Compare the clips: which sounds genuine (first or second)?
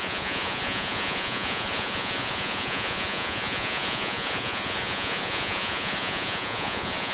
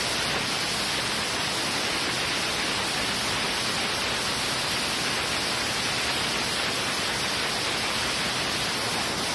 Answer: second